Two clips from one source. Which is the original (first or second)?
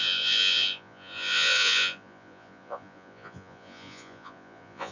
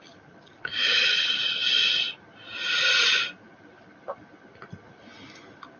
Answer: second